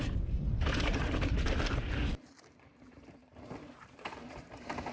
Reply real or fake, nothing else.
fake